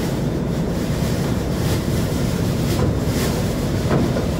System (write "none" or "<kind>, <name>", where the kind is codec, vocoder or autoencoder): vocoder, BigVGAN v2